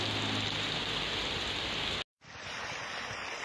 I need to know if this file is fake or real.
real